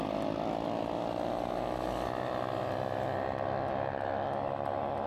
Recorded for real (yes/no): yes